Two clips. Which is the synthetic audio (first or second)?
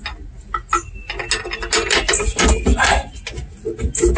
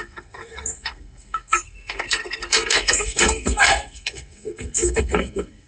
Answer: second